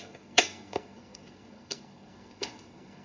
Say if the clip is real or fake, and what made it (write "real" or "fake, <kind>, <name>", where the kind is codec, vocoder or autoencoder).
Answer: fake, codec, SNAC